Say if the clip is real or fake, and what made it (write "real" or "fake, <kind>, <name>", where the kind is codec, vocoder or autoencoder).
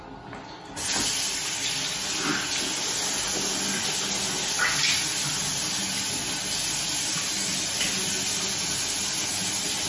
real